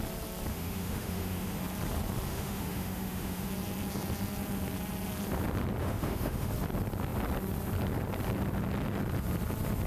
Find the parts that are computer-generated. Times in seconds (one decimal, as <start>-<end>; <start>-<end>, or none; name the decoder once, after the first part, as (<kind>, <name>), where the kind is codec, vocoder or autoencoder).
0.5-1.6 (autoencoder, DAC-VAE); 2.3-3.5; 5.8-6.5